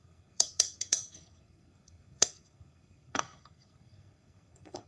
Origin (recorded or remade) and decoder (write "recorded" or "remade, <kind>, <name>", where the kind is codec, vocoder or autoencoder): remade, codec, SNAC